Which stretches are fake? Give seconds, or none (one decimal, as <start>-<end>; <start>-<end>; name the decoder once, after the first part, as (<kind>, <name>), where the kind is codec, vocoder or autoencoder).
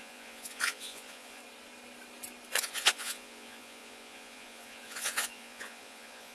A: 0.0-1.4 (vocoder, Vocos); 2.6-6.3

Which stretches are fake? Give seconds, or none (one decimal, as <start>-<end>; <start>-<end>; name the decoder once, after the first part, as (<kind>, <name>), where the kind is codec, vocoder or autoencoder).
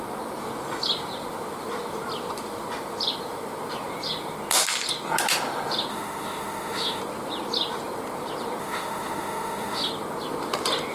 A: 5.9-7.0 (autoencoder, DAC-VAE); 8.6-9.9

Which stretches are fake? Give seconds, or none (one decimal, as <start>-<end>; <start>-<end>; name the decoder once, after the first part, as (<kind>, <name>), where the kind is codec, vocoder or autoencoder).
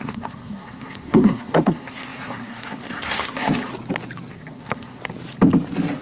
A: 0.0-3.7 (codec, SNAC); 4.3-5.0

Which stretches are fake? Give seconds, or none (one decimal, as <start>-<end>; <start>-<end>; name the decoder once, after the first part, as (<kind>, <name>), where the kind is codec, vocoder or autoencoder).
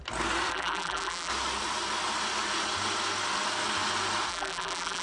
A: 0.5-1.3 (vocoder, BigVGAN v2); 4.3-5.0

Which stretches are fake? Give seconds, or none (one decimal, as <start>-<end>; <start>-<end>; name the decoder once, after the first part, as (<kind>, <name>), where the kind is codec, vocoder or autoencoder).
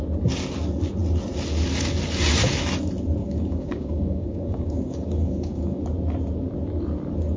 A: 3.2-5.8 (codec, DAC)